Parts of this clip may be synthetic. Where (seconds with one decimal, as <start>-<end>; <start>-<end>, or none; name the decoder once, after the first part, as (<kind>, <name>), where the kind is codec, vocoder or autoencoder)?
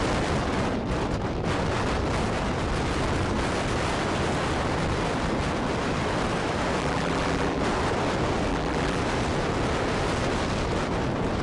6.8-7.6 (vocoder, BigVGAN v2); 8.5-9.0